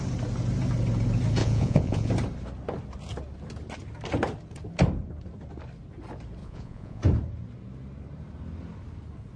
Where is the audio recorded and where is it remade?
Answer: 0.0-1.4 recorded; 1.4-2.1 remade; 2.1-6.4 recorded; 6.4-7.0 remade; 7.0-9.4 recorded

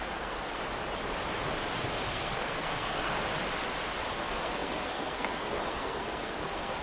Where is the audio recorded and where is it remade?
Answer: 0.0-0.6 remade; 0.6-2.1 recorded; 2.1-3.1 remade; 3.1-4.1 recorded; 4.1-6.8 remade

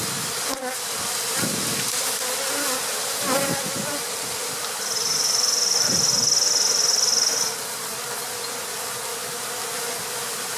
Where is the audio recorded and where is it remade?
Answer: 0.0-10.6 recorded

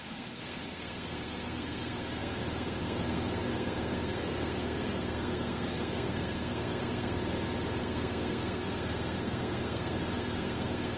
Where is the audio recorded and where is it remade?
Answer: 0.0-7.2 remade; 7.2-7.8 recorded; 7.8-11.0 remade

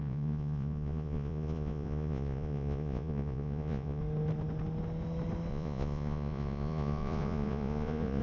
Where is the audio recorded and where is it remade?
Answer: 0.0-4.0 remade; 4.0-5.5 recorded; 5.5-8.2 remade

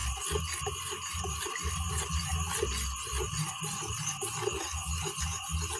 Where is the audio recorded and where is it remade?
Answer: 0.0-5.8 recorded